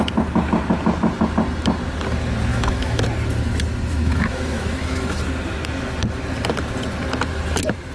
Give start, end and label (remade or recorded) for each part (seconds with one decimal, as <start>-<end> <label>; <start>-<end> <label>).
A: 0.0-2.5 recorded; 2.5-3.0 remade; 3.0-3.9 recorded; 3.9-5.2 remade; 5.2-7.9 recorded